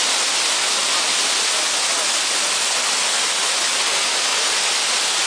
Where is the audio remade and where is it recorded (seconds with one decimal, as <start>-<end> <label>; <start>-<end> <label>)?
0.0-5.3 recorded